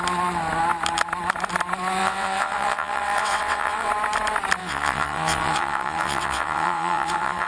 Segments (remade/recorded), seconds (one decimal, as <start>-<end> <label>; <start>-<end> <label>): 0.0-2.0 recorded; 2.0-3.9 remade; 3.9-4.6 recorded; 4.6-7.5 remade